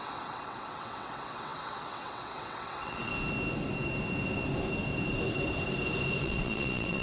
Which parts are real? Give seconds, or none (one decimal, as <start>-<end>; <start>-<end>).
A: 3.1-6.2